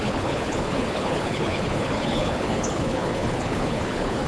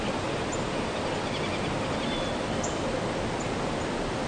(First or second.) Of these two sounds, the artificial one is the first